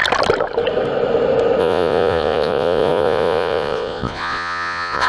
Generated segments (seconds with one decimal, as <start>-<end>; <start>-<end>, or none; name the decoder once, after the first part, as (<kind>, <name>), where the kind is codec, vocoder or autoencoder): 1.6-5.1 (vocoder, Vocos)